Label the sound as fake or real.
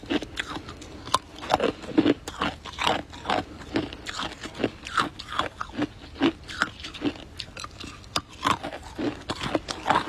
real